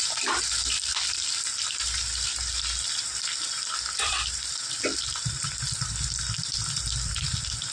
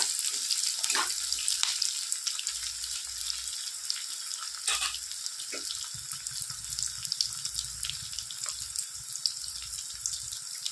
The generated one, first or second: first